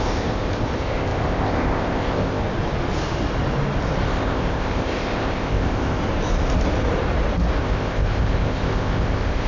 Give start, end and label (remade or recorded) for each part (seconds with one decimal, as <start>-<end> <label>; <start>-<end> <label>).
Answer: 0.0-2.4 remade; 2.4-4.1 recorded; 4.1-6.0 remade; 6.0-7.6 recorded; 7.6-9.5 remade